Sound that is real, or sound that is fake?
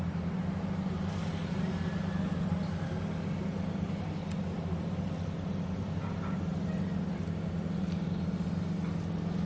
real